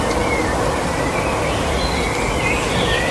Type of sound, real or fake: real